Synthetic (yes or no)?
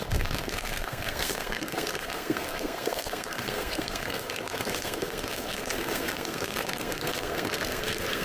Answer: yes